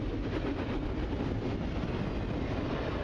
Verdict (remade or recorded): recorded